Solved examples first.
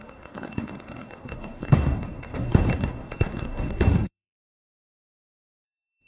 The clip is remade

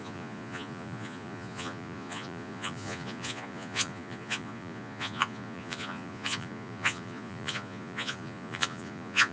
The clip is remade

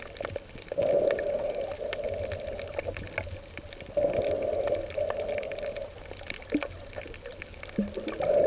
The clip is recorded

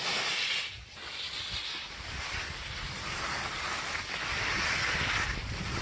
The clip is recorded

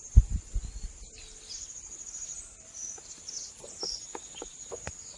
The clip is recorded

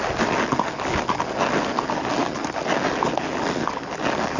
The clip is recorded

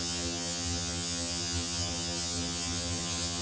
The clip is remade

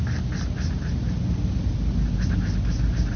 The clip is recorded